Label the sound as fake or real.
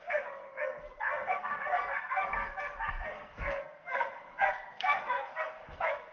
fake